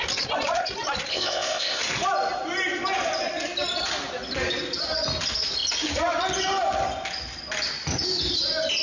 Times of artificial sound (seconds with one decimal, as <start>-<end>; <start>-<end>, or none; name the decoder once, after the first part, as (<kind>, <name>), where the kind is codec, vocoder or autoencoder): 1.1-1.8 (codec, ZipCodec)